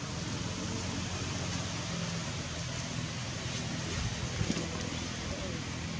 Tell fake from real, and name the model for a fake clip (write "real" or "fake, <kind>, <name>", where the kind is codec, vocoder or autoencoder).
real